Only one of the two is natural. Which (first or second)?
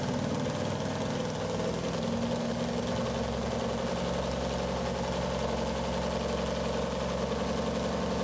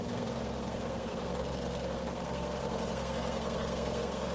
first